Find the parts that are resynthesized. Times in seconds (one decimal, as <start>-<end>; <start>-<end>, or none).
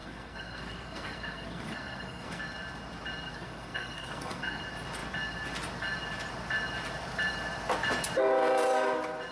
0.0-2.4; 3.3-4.6